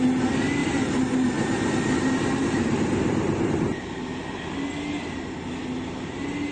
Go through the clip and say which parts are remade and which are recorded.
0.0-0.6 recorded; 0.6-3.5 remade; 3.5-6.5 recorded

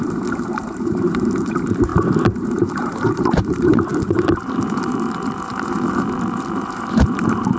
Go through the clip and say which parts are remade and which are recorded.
0.0-1.9 remade; 1.9-2.4 recorded; 2.4-7.6 remade

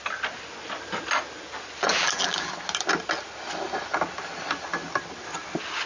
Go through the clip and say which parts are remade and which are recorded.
0.0-1.9 recorded; 1.9-2.5 remade; 2.5-5.9 recorded

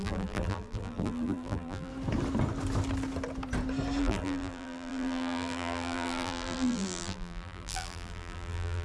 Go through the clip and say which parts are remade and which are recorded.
0.0-1.9 remade; 1.9-4.0 recorded; 4.0-8.8 remade

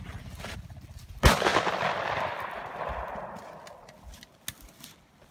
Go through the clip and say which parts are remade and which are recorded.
0.0-5.3 recorded